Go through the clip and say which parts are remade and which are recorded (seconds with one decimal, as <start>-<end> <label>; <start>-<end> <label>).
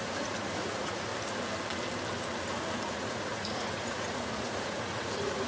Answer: 0.0-1.1 remade; 1.1-2.9 recorded; 2.9-5.5 remade